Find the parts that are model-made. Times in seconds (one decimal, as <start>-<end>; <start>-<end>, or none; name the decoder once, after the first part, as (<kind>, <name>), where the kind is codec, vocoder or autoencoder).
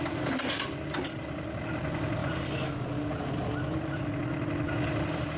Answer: none